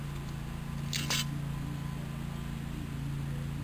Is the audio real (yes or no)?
yes